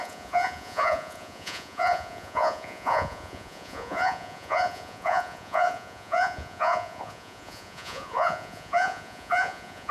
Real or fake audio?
fake